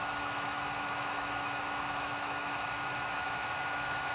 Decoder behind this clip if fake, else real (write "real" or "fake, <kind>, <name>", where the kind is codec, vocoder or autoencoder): fake, autoencoder, DAC-VAE